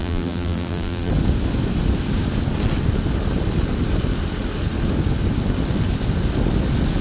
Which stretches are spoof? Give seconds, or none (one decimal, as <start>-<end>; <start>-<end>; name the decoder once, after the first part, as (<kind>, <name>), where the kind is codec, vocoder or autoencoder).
0.0-1.1 (vocoder, BigVGAN v2)